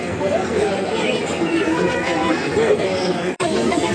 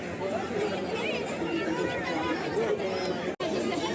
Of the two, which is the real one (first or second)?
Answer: second